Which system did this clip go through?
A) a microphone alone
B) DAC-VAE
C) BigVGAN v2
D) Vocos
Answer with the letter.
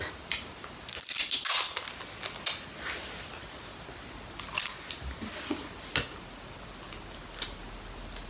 A